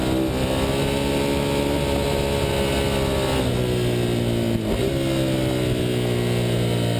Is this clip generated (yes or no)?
no